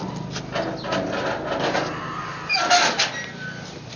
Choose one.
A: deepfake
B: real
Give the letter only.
B